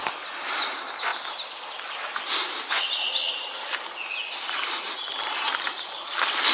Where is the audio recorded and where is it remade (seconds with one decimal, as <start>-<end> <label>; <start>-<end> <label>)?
0.0-6.5 recorded